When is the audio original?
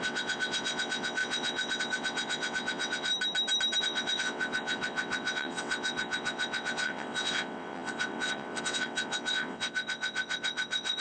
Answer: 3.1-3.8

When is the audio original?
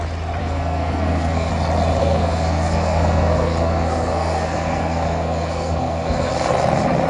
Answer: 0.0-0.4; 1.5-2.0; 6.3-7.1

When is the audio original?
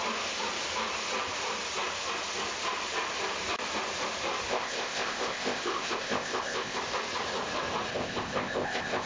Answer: 0.0-4.5; 6.8-7.9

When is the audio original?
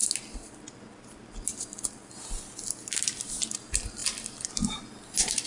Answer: 0.0-5.5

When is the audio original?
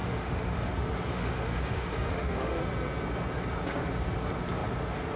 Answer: 0.7-1.1; 2.6-5.2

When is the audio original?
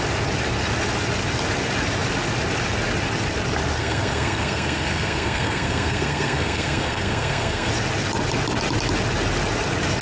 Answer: 0.0-3.8; 7.7-10.0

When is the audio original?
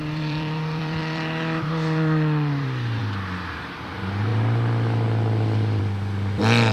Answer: none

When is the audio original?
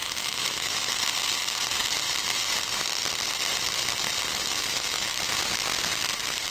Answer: 1.0-4.3; 5.2-6.5